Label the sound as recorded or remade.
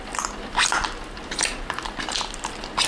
recorded